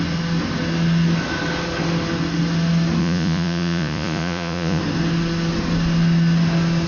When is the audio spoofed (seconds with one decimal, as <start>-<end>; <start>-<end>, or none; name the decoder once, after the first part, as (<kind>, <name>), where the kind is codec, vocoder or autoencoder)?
3.0-4.8 (vocoder, Vocos)